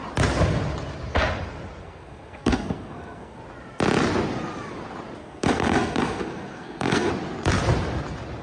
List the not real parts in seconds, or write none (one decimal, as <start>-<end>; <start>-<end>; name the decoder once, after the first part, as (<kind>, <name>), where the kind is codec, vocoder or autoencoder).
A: 1.8-3.4 (codec, SNAC); 5.2-7.1